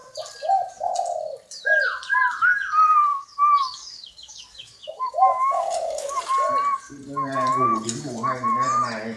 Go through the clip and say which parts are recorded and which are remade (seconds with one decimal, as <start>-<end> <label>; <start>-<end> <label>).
0.0-3.1 recorded; 3.1-6.2 remade; 6.2-9.2 recorded